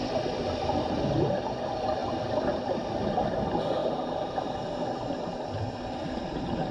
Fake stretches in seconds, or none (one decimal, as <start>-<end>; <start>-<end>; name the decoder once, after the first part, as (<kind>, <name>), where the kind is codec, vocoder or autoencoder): 0.0-6.7 (vocoder, BigVGAN v2)